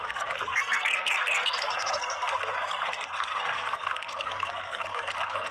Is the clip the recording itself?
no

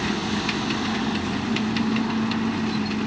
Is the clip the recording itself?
yes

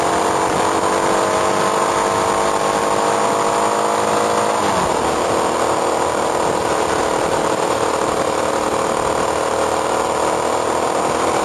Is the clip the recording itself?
yes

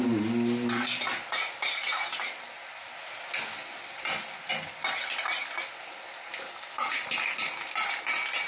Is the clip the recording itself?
yes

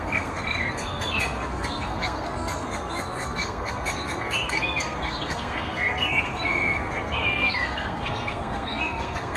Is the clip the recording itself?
no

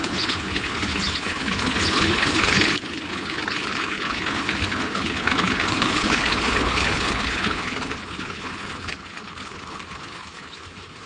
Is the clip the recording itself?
no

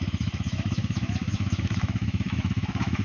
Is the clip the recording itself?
no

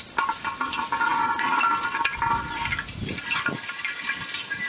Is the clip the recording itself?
yes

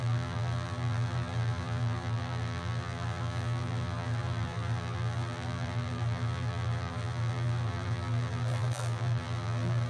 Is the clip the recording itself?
no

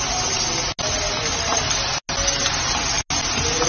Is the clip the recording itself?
yes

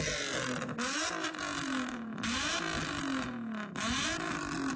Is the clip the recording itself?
yes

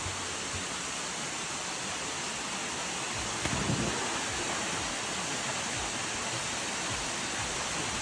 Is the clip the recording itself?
yes